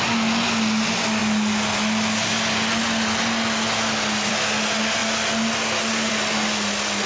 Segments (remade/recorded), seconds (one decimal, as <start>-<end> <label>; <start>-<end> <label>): 0.0-7.1 recorded